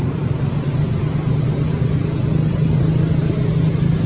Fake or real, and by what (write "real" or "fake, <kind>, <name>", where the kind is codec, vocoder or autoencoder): real